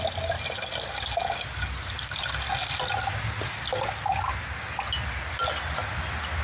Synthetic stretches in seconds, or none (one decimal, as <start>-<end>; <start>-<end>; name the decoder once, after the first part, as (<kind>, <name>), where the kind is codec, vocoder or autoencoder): none